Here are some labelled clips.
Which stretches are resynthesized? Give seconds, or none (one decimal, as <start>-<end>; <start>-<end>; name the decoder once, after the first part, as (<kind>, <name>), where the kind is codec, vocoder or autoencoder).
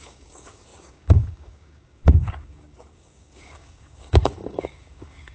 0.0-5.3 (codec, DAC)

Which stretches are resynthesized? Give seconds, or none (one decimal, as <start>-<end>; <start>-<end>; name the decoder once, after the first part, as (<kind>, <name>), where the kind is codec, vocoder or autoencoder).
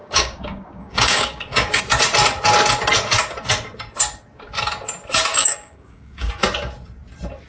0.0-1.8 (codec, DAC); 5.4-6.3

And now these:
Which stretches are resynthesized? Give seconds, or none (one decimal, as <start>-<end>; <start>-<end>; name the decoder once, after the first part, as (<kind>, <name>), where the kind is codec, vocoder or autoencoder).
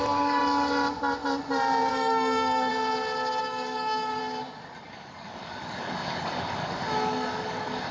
0.0-0.4 (codec, DAC); 1.9-2.7; 3.4-4.2; 4.9-7.9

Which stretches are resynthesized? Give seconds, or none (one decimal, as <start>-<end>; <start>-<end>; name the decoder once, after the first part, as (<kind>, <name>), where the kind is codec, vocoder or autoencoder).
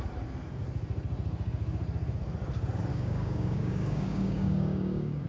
2.9-5.3 (codec, DAC)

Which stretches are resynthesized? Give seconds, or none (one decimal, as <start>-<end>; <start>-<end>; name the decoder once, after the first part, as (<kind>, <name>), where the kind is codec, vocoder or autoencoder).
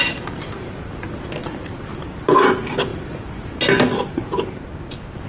none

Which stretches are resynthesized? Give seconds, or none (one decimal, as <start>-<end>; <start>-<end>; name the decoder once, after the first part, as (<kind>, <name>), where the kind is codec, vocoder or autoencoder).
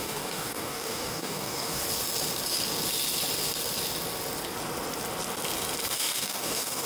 0.0-1.8 (codec, DAC); 5.9-6.9